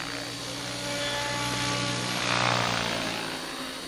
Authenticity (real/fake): real